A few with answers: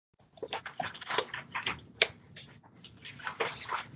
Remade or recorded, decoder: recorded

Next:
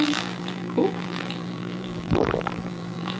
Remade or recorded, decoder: remade, vocoder, BigVGAN v2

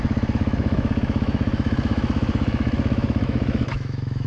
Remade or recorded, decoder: remade, autoencoder, DAC-VAE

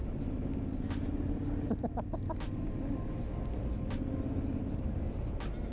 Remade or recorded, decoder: recorded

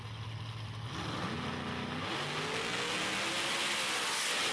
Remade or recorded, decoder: recorded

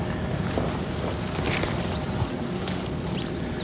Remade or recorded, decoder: recorded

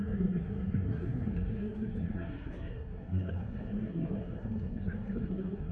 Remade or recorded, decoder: remade, codec, SNAC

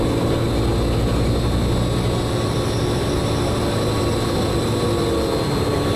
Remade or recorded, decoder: recorded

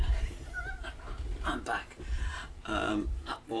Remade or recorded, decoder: remade, vocoder, BigVGAN v2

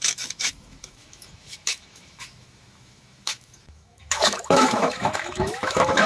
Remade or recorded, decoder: remade, autoencoder, DAC-VAE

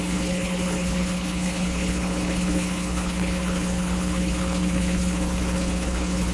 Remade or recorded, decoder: remade, codec, HILCodec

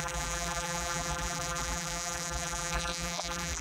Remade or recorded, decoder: remade, vocoder, BigVGAN v2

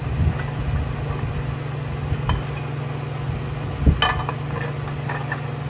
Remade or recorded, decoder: recorded